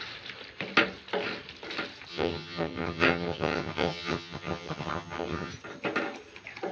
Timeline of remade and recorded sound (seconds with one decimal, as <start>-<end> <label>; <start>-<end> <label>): 0.0-2.1 recorded; 2.1-5.5 remade; 5.5-6.7 recorded